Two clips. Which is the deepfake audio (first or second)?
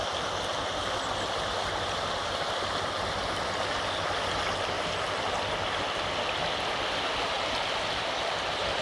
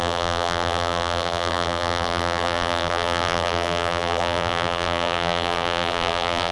second